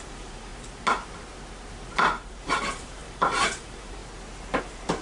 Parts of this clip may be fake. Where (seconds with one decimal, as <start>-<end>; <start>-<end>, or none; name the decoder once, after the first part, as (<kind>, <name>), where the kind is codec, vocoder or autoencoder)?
0.0-0.5 (vocoder, BigVGAN v2); 2.3-4.0; 4.6-5.0